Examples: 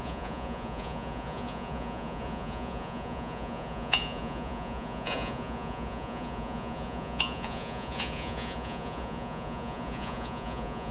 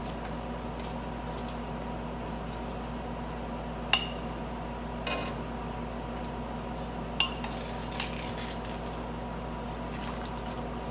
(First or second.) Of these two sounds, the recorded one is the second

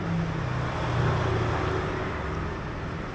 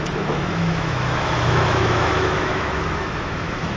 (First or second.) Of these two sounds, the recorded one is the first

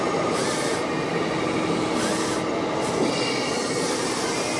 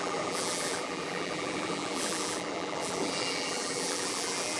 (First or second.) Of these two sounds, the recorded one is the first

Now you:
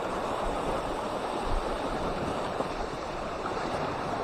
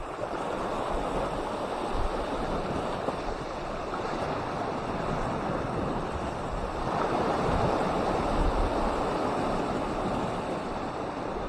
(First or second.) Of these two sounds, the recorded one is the second